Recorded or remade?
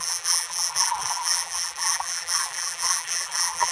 remade